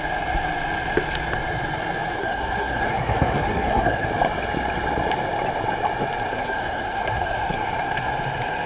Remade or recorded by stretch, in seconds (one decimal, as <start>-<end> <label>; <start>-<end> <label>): 0.0-2.2 recorded; 2.2-4.1 remade; 4.1-6.3 recorded; 6.3-8.1 remade; 8.1-8.7 recorded